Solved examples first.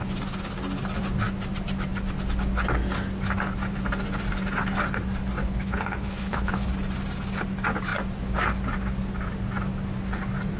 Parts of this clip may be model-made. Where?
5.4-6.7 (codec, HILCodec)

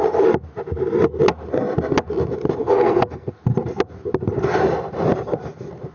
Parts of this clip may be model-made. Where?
2.6-3.3 (codec, SNAC)

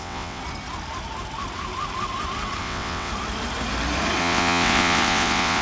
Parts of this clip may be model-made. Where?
0.0-0.4 (vocoder, WaveNeXt); 2.6-3.1; 4.2-5.6

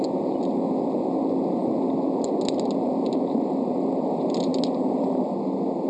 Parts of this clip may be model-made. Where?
none

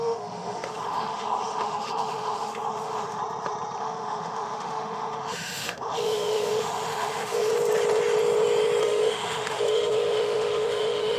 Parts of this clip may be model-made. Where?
0.0-3.2 (autoencoder, DAC-VAE); 3.8-7.5; 8.8-11.2

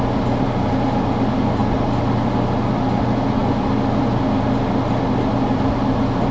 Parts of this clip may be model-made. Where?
none

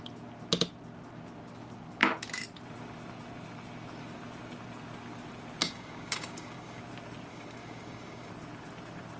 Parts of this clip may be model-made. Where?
5.6-6.8 (codec, DAC); 7.3-8.3

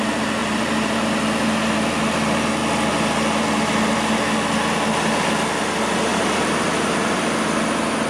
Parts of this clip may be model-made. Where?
0.4-1.2 (vocoder, BigVGAN v2); 6.1-7.2